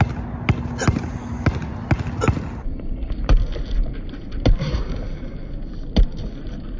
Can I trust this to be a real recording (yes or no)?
yes